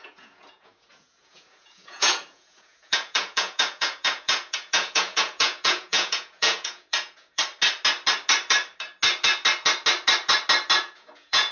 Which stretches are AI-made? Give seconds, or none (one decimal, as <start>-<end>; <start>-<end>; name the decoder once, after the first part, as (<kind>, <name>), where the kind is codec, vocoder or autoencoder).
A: 0.0-7.4 (vocoder, Vocos); 10.8-11.5